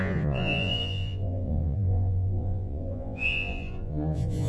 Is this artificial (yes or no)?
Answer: yes